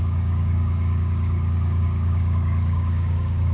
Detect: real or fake fake